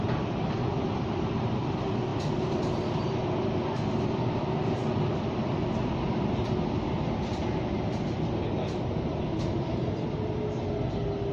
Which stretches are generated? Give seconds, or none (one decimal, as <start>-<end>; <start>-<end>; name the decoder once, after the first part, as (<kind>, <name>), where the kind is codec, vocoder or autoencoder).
none

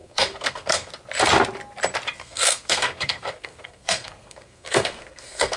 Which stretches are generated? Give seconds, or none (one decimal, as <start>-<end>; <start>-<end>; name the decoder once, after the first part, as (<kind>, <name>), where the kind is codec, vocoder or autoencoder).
0.0-0.9 (codec, SNAC); 2.2-5.6

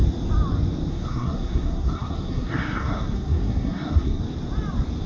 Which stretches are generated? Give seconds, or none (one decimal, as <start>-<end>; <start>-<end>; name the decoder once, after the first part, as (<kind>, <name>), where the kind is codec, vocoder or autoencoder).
0.9-4.2 (codec, SNAC)